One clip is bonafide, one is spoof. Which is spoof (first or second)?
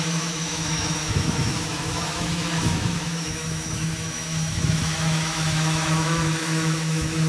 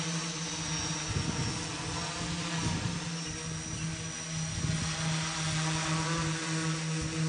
first